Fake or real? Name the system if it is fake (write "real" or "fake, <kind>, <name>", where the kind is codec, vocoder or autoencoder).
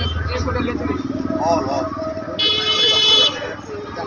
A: real